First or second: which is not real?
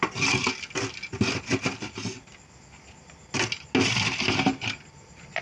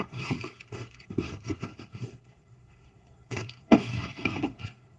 second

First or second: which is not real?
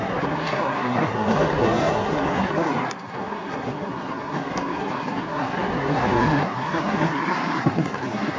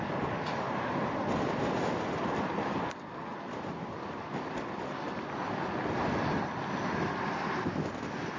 first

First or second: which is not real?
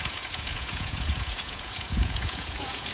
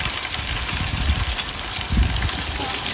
first